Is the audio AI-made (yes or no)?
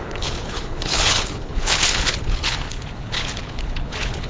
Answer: yes